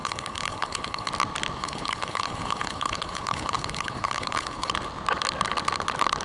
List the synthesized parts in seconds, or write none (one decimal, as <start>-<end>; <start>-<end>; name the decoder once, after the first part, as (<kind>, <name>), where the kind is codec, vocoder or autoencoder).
0.0-1.1 (codec, HILCodec); 1.6-4.7